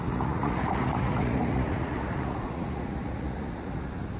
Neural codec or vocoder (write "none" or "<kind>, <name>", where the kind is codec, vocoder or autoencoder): vocoder, Vocos